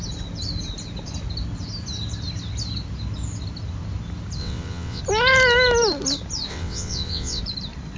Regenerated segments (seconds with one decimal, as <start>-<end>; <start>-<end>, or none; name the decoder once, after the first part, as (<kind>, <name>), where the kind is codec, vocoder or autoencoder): 4.4-5.0 (vocoder, WaveNeXt); 6.5-7.4